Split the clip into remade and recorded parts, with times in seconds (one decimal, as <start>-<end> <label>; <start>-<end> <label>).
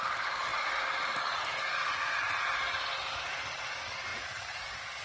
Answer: 0.0-4.1 recorded; 4.1-5.0 remade